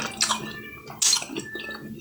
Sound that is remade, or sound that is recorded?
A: recorded